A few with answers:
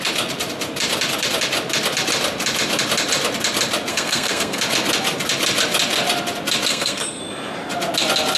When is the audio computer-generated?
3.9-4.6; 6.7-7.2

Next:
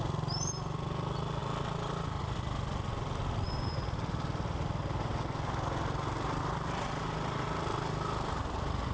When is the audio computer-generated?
none

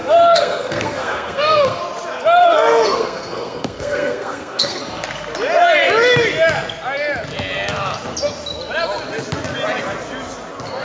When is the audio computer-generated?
0.0-1.8; 2.4-4.8

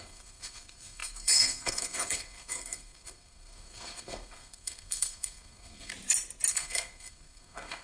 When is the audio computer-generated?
0.0-5.9; 6.5-7.8

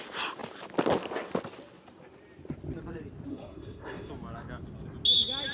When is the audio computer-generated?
3.3-4.1